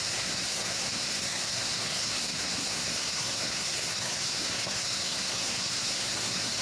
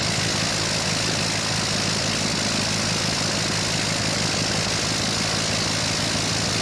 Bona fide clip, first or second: second